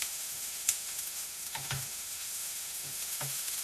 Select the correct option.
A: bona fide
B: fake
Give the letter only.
B